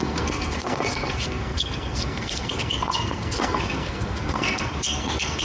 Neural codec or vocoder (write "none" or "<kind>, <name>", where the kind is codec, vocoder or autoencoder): codec, SNAC